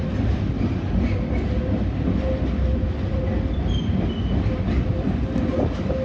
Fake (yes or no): no